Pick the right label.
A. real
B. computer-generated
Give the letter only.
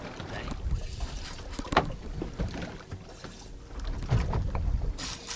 A